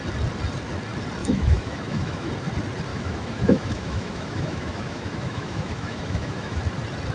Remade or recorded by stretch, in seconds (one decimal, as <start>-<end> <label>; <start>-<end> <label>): 0.0-1.2 recorded; 1.2-2.3 remade; 2.3-2.9 recorded; 2.9-6.6 remade; 6.6-7.1 recorded